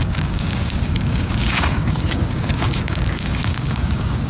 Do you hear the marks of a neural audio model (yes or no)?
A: yes